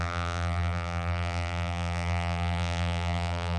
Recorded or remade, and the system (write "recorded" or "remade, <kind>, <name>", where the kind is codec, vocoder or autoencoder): remade, vocoder, BigVGAN v2